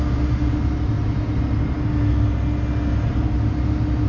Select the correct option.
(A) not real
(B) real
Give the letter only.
B